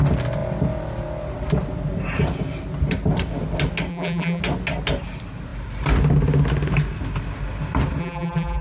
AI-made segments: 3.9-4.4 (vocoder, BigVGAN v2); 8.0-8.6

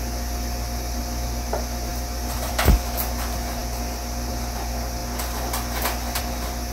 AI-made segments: none

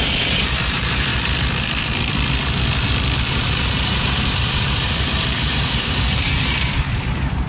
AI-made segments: 0.0-1.1 (vocoder, BigVGAN v2); 3.2-7.5

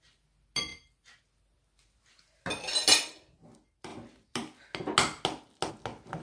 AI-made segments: none